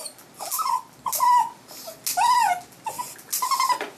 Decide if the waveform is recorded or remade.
recorded